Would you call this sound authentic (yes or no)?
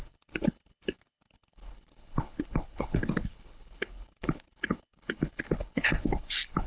no